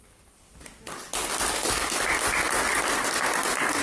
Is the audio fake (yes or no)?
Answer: no